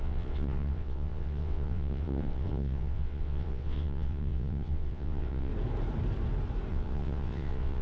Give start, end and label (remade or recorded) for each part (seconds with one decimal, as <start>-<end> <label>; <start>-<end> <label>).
0.0-5.5 remade; 5.5-6.7 recorded; 6.7-7.8 remade